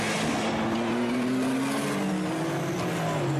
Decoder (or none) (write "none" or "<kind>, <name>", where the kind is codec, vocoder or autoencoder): none